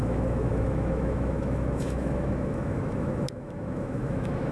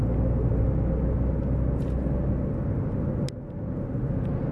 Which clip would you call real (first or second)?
second